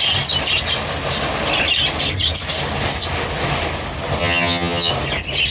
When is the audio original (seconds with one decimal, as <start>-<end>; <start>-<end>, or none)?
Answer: 0.0-4.2; 4.9-5.5